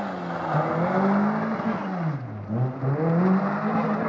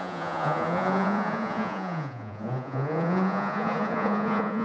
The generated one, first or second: second